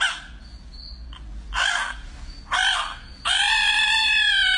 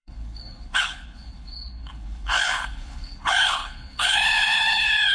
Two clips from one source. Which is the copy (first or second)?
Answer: second